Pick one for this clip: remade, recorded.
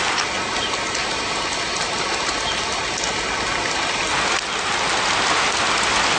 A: recorded